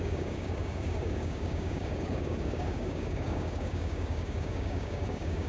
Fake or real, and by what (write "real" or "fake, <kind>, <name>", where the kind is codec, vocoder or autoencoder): fake, codec, DAC